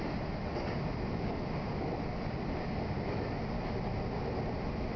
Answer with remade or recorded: recorded